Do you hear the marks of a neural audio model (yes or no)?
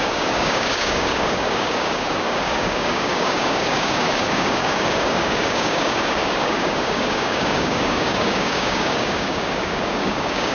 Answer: yes